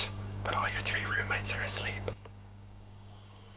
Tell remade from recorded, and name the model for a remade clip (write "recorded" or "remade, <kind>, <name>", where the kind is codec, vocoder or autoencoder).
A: remade, codec, DAC